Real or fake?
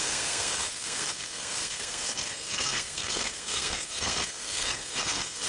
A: fake